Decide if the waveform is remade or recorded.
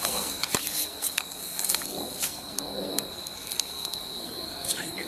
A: remade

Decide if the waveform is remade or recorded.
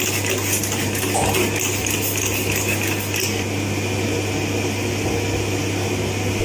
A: recorded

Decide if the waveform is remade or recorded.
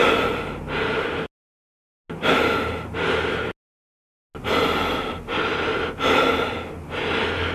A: recorded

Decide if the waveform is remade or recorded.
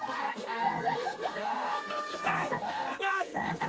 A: remade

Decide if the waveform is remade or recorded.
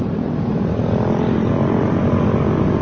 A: recorded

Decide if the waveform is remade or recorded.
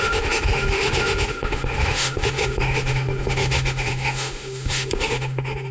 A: remade